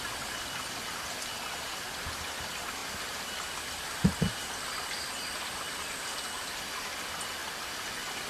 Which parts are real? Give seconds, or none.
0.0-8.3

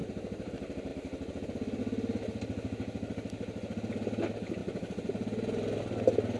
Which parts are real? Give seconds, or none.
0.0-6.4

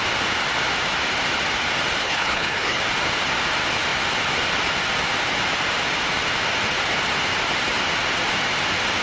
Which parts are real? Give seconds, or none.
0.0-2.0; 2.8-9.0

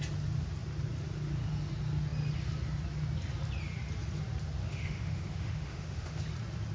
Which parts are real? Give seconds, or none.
0.0-4.6; 6.2-6.7

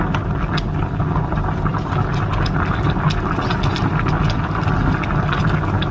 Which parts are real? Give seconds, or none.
0.0-5.9